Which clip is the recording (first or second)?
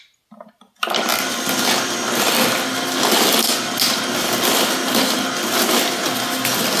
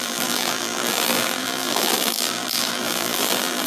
first